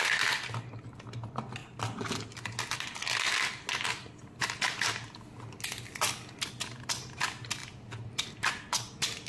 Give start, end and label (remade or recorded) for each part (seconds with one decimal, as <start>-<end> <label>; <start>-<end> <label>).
0.0-9.3 recorded